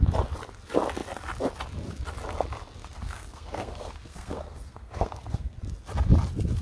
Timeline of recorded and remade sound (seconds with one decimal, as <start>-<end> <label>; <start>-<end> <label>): 0.0-2.8 recorded; 2.8-5.6 remade; 5.6-6.6 recorded